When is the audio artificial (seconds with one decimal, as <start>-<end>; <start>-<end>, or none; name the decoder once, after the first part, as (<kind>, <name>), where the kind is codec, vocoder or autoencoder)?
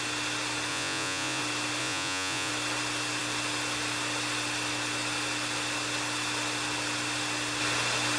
0.7-1.4 (vocoder, Vocos); 1.8-2.5